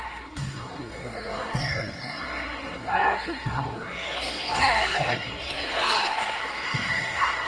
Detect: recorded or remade remade